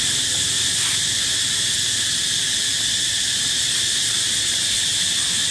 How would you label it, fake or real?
real